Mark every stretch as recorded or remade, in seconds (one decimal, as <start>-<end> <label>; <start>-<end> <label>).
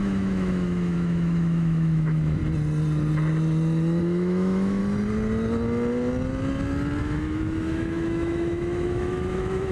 0.0-2.4 remade; 2.4-4.0 recorded; 4.0-4.8 remade; 4.8-7.0 recorded; 7.0-9.7 remade